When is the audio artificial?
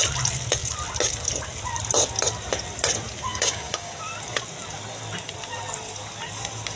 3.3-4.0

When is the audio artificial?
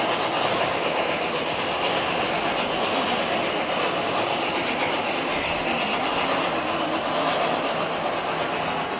0.5-1.6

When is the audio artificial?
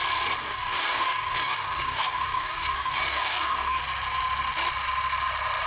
0.4-3.8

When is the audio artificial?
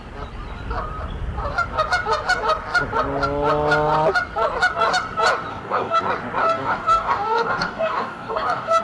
5.5-6.0; 6.4-8.8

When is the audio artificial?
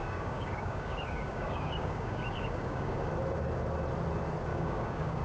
0.0-3.1; 4.5-5.2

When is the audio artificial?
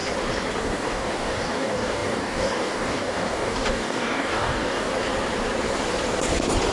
0.6-4.9